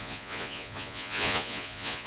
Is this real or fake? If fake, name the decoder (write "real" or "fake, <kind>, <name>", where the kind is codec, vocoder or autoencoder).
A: fake, vocoder, Vocos